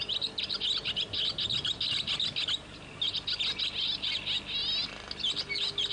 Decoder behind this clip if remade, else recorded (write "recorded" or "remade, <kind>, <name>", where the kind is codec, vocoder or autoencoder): recorded